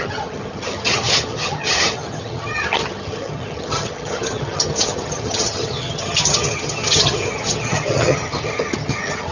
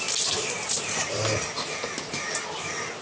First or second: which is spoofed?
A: first